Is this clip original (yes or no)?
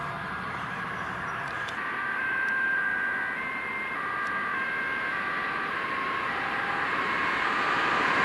no